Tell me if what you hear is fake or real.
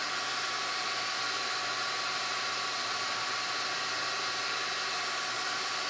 real